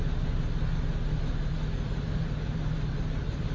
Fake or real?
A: real